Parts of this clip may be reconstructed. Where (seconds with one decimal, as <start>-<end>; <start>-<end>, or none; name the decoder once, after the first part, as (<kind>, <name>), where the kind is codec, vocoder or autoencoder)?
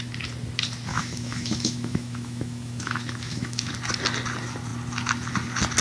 0.9-3.7 (autoencoder, DAC-VAE)